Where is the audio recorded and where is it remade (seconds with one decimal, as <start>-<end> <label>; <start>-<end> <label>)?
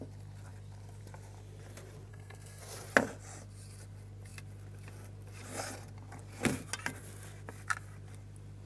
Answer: 0.0-2.1 recorded; 2.1-2.6 remade; 2.6-8.7 recorded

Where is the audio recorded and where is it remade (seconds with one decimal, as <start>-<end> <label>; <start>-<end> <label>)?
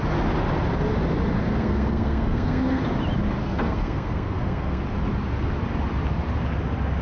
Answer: 0.0-1.5 recorded; 1.5-2.8 remade; 2.8-3.4 recorded; 3.4-4.8 remade; 4.8-7.0 recorded